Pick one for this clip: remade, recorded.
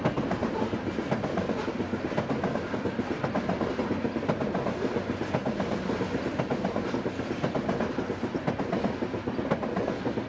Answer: recorded